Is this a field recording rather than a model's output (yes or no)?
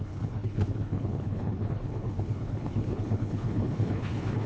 no